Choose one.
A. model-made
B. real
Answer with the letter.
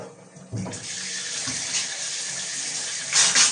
B